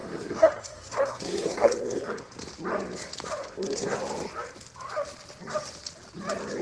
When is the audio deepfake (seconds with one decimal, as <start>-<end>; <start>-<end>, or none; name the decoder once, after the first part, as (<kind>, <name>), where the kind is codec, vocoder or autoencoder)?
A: 0.0-2.3 (codec, SNAC); 3.4-4.0